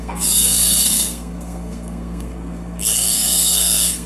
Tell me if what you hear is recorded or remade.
remade